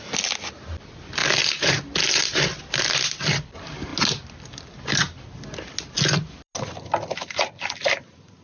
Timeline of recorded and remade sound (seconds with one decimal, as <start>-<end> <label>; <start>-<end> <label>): 0.0-8.4 recorded